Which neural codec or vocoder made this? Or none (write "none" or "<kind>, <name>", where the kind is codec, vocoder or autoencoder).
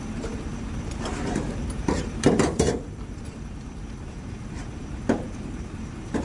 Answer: vocoder, BigVGAN v2